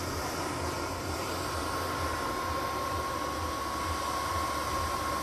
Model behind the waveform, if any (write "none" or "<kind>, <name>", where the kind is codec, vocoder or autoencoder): none